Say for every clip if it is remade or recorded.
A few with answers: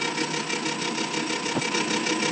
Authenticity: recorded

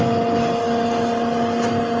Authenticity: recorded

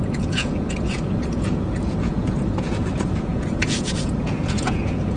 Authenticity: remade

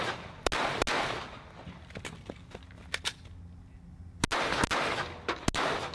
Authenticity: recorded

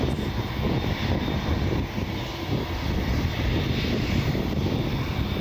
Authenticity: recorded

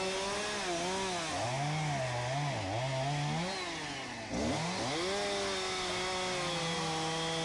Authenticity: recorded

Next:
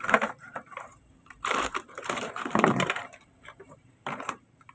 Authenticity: remade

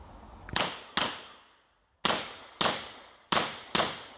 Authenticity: recorded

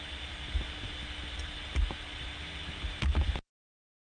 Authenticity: recorded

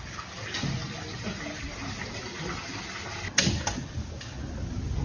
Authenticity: recorded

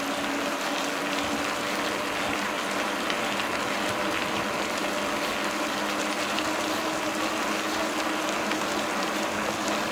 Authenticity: recorded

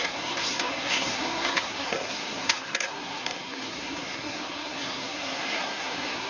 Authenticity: remade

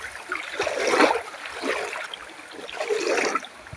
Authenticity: recorded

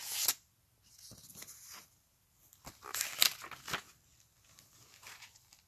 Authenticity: recorded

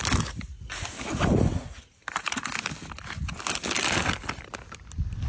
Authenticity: recorded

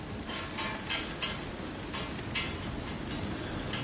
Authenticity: recorded